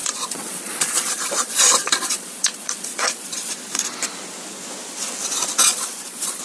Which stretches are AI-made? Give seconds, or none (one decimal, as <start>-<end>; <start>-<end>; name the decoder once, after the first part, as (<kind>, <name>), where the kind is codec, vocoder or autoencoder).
0.0-3.5 (vocoder, Vocos); 5.7-6.4